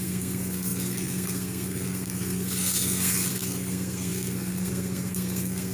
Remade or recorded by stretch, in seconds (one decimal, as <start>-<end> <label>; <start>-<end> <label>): 0.0-5.7 remade